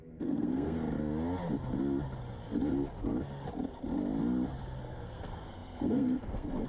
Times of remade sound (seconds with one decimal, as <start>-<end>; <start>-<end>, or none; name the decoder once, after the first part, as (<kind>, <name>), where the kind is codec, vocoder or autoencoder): 0.0-0.8 (codec, SNAC); 4.8-6.7